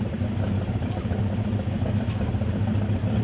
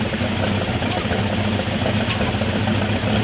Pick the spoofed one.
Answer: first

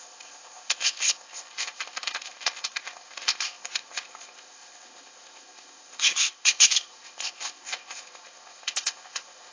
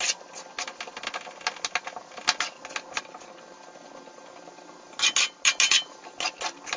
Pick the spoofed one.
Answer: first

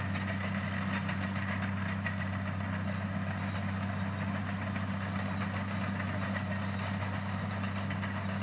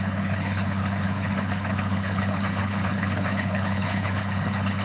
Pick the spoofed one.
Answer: second